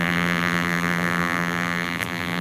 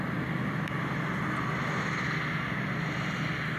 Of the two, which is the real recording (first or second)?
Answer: second